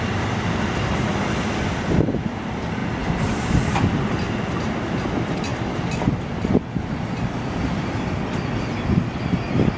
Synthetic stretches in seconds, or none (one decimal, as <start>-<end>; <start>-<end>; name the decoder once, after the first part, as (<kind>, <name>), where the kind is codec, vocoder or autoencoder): none